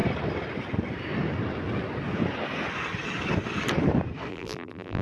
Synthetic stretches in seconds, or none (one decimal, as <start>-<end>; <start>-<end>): 4.3-5.0